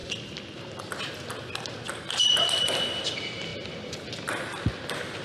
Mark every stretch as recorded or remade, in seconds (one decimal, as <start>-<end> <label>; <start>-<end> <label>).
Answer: 0.0-5.2 recorded